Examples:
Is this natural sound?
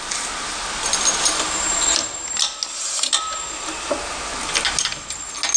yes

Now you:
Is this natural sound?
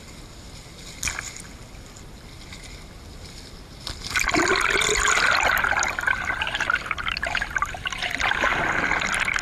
yes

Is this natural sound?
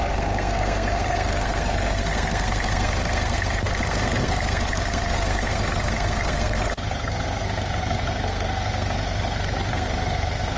no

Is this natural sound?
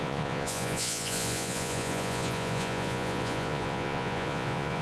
no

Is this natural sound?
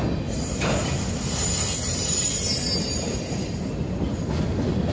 yes